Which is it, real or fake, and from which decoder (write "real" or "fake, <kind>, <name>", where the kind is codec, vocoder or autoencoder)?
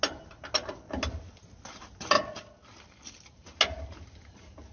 real